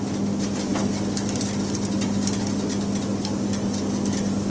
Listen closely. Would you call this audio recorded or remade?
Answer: recorded